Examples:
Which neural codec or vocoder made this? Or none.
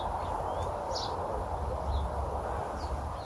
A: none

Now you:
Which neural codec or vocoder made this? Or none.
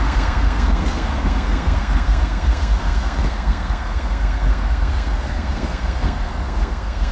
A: codec, SNAC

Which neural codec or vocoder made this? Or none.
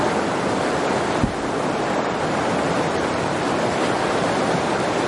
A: none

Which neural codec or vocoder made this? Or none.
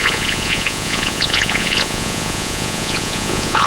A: vocoder, Vocos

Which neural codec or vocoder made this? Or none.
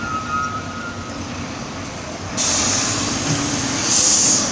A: vocoder, BigVGAN v2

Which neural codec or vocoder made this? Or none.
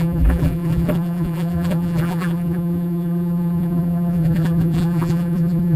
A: vocoder, BigVGAN v2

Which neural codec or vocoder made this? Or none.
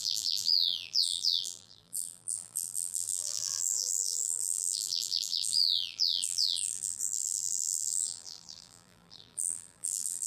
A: vocoder, BigVGAN v2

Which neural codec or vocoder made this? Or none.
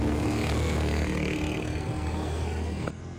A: codec, SNAC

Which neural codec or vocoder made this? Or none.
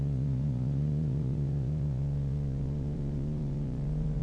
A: vocoder, Vocos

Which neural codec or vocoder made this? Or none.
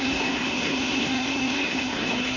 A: codec, SNAC